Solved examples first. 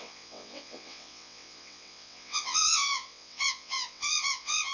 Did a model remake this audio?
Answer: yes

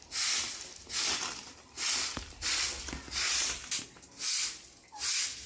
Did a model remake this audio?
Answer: no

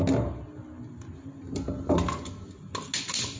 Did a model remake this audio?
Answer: no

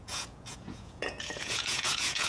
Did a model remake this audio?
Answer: yes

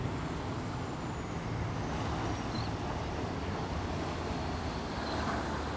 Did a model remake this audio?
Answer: no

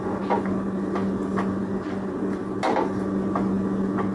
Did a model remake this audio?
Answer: no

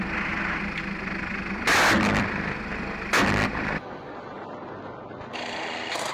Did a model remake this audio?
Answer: no